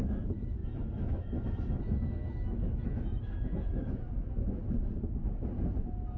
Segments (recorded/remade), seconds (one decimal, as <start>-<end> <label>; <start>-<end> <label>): 0.0-4.6 remade; 4.6-6.2 recorded

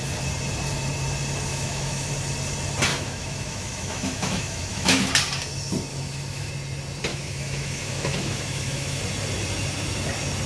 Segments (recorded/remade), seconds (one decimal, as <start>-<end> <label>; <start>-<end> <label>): 0.0-1.5 recorded; 1.5-2.1 remade; 2.1-2.9 recorded; 2.9-5.1 remade; 5.1-5.9 recorded; 5.9-6.5 remade; 6.5-7.1 recorded; 7.1-9.0 remade; 9.0-10.5 recorded

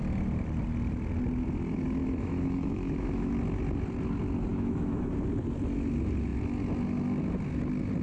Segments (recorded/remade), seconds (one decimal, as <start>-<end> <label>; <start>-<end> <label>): 0.0-2.0 recorded; 2.0-3.3 remade; 3.3-4.5 recorded; 4.5-5.1 remade; 5.1-8.0 recorded

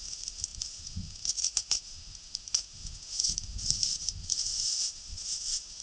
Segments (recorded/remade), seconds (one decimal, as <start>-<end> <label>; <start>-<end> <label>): 0.0-5.8 remade

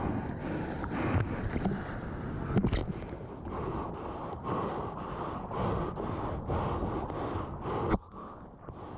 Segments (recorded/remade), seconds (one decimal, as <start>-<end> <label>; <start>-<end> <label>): 0.0-9.0 recorded

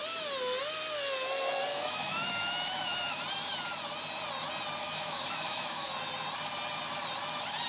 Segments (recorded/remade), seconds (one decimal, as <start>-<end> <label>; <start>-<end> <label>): 0.0-1.7 recorded; 1.7-3.2 remade; 3.2-4.8 recorded; 4.8-5.9 remade; 5.9-7.7 recorded

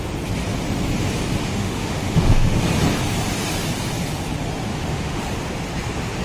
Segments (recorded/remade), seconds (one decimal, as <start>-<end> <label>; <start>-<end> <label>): 0.0-1.4 recorded; 1.4-2.6 remade; 2.6-4.7 recorded; 4.7-5.2 remade; 5.2-6.2 recorded

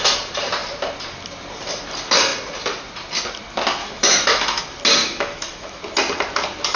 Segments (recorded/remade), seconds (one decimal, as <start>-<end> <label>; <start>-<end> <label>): 0.0-3.8 recorded; 3.8-4.6 remade; 4.6-5.0 recorded; 5.0-5.8 remade; 5.8-6.8 recorded